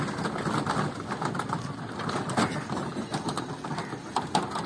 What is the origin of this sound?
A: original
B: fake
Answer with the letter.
A